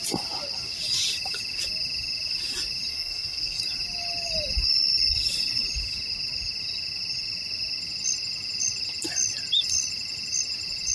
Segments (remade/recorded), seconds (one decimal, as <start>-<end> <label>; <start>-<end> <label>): 0.0-2.9 recorded; 2.9-3.6 remade; 3.6-10.9 recorded